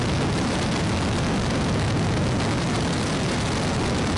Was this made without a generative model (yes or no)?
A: yes